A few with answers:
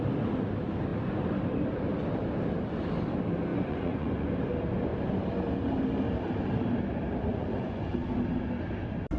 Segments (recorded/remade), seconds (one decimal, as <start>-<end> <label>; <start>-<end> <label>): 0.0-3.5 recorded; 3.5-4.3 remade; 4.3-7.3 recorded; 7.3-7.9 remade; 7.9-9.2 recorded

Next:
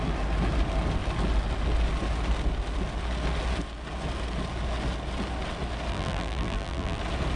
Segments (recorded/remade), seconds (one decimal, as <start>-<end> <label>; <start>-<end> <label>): 0.0-5.9 recorded; 5.9-7.0 remade; 7.0-7.4 recorded

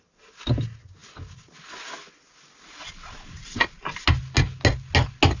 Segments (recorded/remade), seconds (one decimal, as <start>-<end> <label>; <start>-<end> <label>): 0.0-5.4 recorded

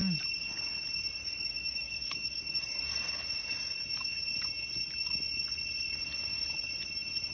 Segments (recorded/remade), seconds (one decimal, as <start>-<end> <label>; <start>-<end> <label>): 0.0-1.2 recorded; 1.2-3.1 remade; 3.1-7.3 recorded

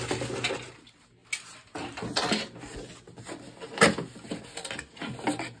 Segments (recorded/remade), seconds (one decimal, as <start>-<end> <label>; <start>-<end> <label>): 0.0-5.6 recorded

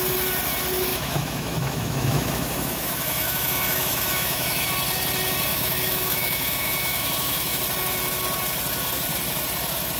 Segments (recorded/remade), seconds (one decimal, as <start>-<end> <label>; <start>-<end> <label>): 0.0-0.9 recorded; 0.9-4.7 remade; 4.7-5.5 recorded; 5.5-7.6 remade; 7.6-10.0 recorded

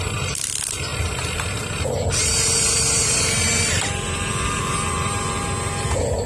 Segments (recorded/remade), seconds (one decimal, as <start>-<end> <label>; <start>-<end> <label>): 0.0-6.3 recorded

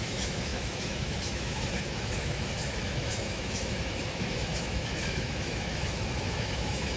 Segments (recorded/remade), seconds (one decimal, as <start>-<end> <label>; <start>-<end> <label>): 0.0-7.0 remade